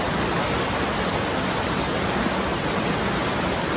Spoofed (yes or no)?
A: no